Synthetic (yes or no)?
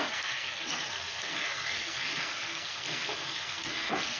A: yes